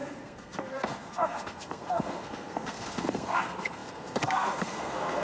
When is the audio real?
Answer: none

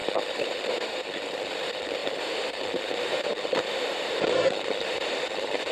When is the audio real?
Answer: none

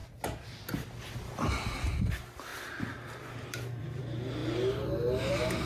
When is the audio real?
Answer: 0.0-2.5; 4.0-5.7

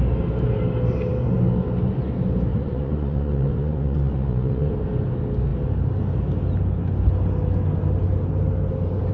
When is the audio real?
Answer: 0.0-2.5; 4.7-9.1

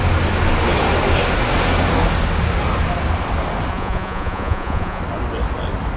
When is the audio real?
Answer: 0.0-3.7; 5.0-6.0

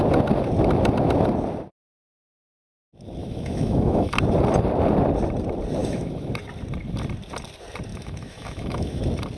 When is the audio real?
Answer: 0.0-3.2; 4.1-5.8; 6.3-7.9; 9.0-9.4

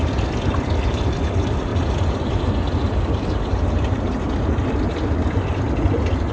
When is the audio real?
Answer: 0.0-1.7; 2.5-3.5; 4.1-6.3